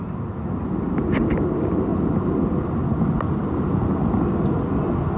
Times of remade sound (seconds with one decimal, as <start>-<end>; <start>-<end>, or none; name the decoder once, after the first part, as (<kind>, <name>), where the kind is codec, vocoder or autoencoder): none